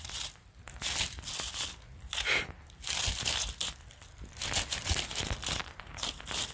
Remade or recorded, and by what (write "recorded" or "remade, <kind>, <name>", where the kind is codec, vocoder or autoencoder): recorded